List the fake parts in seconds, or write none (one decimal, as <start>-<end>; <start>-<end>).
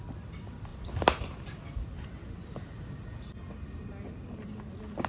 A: none